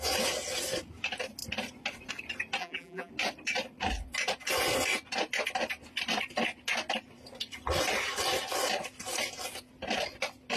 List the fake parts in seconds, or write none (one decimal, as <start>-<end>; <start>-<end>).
2.6-3.1